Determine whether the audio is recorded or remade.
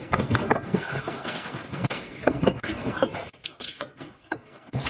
remade